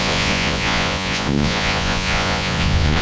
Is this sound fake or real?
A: fake